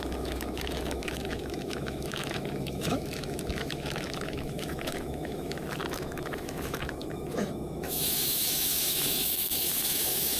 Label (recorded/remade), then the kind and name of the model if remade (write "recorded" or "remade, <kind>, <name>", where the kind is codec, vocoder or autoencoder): remade, autoencoder, DAC-VAE